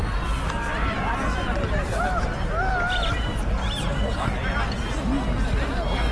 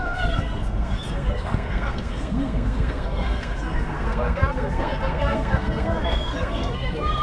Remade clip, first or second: second